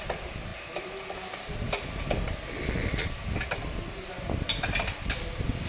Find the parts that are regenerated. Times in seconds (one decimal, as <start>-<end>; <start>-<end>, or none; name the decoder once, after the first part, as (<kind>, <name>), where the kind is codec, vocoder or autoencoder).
none